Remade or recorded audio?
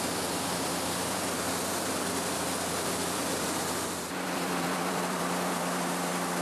remade